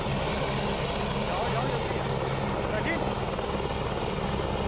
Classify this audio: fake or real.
real